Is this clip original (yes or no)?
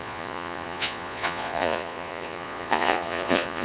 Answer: no